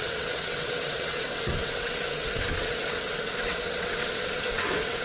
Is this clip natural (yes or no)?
no